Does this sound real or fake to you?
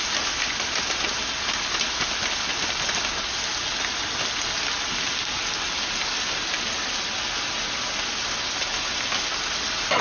real